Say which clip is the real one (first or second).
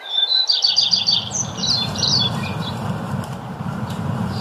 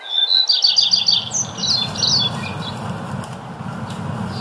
second